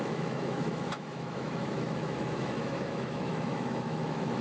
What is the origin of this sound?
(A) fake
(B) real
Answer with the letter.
A